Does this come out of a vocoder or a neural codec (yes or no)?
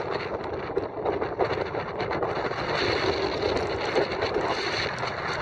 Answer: no